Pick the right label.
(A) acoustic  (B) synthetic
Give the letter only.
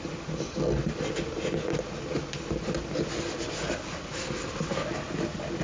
A